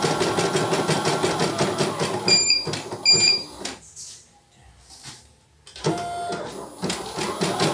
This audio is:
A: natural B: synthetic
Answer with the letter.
A